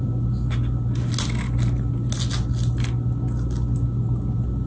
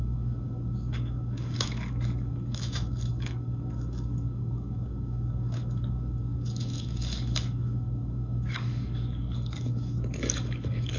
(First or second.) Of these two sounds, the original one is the first